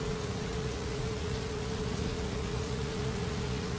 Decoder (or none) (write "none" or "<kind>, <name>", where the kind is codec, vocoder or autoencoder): vocoder, Vocos